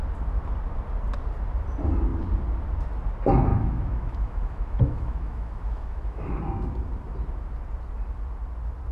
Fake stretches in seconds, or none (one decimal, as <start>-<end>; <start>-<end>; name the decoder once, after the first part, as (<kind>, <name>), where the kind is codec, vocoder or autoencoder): 3.5-6.4 (autoencoder, DAC-VAE)